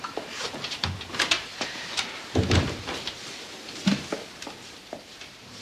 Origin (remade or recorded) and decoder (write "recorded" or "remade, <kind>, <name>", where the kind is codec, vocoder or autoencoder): remade, vocoder, BigVGAN v2